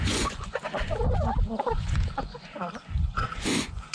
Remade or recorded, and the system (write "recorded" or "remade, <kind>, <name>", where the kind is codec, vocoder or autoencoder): remade, vocoder, Vocos